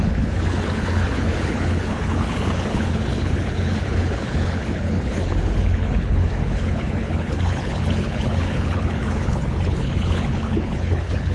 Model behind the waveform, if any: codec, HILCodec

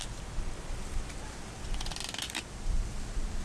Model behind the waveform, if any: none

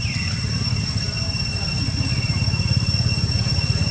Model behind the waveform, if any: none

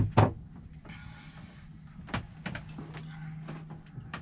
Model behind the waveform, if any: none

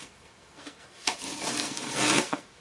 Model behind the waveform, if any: codec, SNAC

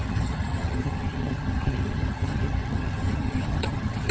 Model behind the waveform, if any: vocoder, HiFi-GAN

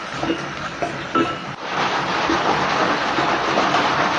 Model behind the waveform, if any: none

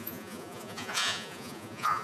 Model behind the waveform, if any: vocoder, Vocos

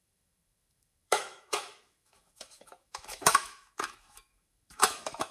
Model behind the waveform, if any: autoencoder, DAC-VAE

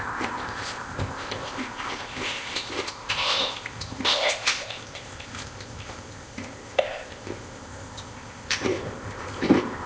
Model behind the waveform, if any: codec, ZipCodec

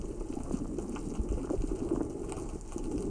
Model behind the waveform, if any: none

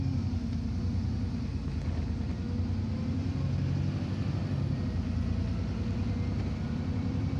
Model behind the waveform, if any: none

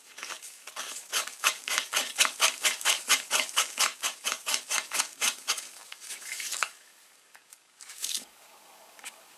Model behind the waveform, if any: codec, DAC